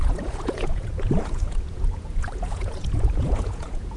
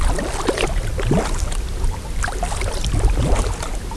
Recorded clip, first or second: second